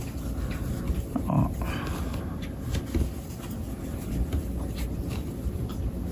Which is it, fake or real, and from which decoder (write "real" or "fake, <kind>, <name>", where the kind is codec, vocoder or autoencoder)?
real